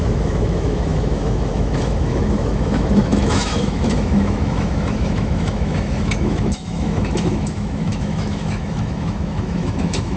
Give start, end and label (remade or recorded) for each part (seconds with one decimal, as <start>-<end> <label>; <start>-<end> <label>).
0.0-10.2 remade